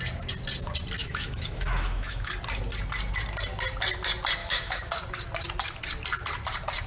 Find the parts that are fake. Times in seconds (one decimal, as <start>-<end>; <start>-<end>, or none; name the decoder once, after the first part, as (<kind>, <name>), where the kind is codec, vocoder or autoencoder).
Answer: 1.0-2.3 (autoencoder, DAC-VAE); 4.4-4.9